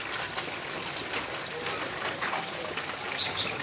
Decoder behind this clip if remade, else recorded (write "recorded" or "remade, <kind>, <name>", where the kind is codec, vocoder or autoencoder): recorded